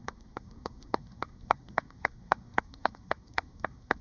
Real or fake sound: fake